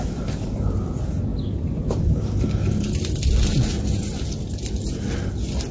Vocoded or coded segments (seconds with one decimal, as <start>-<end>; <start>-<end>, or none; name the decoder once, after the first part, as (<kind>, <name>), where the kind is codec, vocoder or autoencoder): none